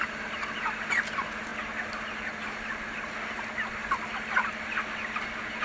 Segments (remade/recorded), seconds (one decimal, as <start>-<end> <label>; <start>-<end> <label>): 0.0-5.6 recorded